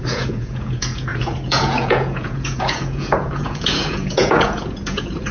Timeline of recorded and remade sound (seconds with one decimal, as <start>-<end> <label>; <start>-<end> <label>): 0.0-5.3 remade